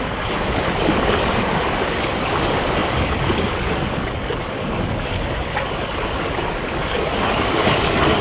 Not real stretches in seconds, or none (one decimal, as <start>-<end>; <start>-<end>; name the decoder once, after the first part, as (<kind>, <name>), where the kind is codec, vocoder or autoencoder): 0.0-8.2 (codec, DAC)